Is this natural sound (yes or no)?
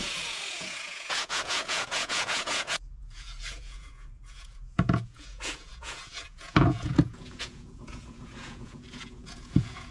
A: no